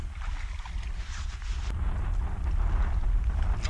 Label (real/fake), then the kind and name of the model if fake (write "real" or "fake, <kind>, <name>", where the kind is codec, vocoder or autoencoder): real